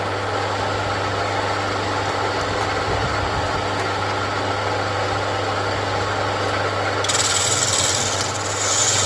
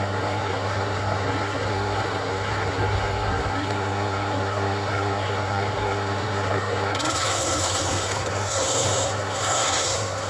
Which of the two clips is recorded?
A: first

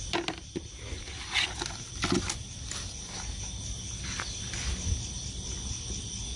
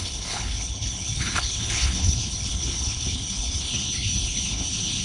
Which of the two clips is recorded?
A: first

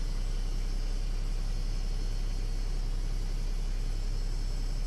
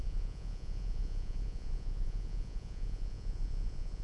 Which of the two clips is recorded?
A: first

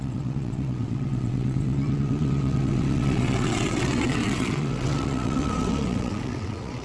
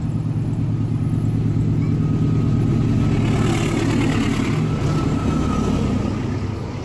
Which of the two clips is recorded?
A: second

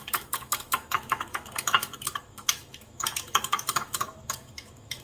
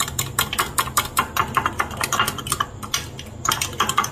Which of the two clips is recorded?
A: second